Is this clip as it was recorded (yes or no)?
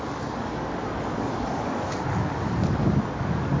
no